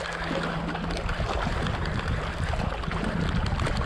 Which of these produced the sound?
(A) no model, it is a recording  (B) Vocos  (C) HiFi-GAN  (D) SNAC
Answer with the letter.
A